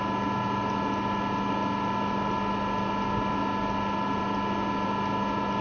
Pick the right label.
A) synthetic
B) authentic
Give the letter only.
B